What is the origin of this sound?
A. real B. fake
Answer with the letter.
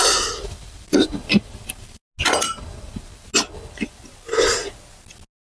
A